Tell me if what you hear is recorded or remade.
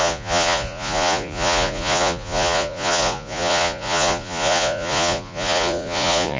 remade